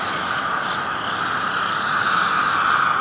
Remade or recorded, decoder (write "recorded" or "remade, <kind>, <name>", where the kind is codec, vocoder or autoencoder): recorded